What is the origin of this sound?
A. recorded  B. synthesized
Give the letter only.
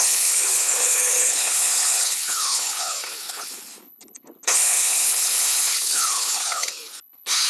B